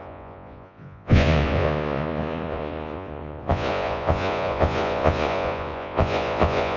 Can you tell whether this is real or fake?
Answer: fake